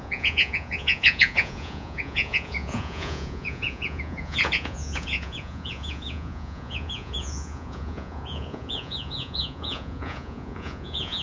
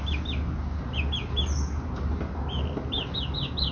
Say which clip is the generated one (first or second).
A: first